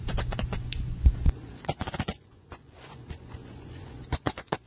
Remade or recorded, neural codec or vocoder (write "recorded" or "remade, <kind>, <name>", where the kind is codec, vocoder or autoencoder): remade, vocoder, Vocos